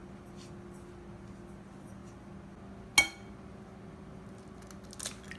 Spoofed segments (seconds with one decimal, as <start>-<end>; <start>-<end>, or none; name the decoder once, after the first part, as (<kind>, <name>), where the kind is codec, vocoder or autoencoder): none